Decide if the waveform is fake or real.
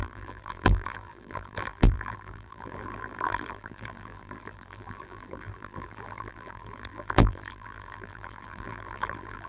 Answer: fake